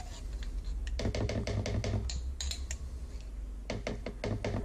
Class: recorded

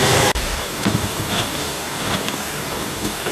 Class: remade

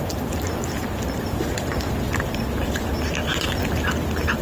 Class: recorded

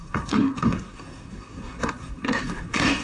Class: remade